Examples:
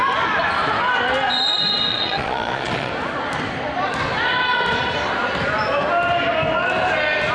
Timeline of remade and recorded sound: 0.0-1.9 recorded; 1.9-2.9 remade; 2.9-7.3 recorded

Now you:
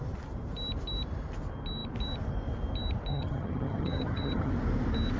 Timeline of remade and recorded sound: 0.0-3.1 recorded; 3.1-4.5 remade; 4.5-5.2 recorded

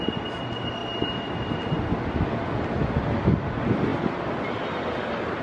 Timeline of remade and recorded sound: 0.0-5.4 recorded

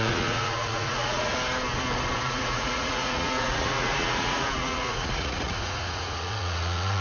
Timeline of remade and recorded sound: 0.0-1.3 remade; 1.3-2.2 recorded; 2.2-7.0 remade

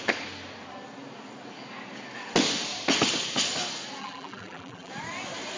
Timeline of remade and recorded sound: 0.0-4.0 recorded; 4.0-4.9 remade; 4.9-5.6 recorded

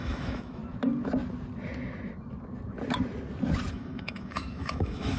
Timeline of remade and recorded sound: 0.0-0.6 remade; 0.6-3.7 recorded; 3.7-5.2 remade